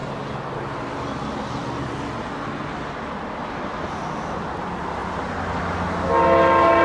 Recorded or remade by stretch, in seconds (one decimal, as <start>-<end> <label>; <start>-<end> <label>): 0.0-6.8 recorded